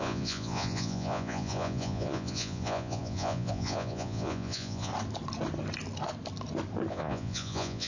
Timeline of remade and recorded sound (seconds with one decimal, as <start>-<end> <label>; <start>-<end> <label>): 0.0-4.9 remade; 4.9-6.9 recorded; 6.9-7.9 remade